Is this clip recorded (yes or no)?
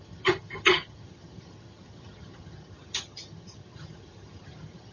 no